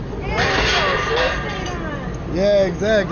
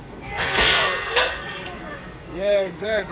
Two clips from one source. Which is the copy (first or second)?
second